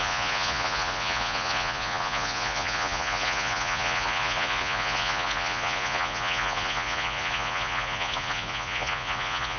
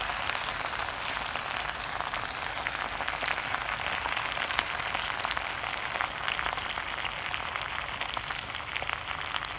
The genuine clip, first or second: second